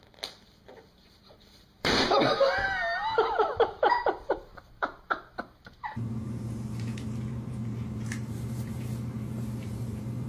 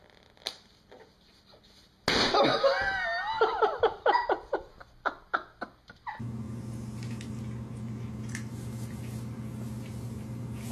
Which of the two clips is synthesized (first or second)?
first